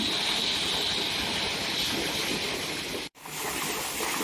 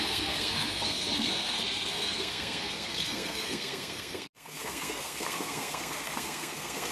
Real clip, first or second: first